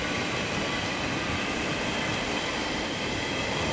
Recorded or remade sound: recorded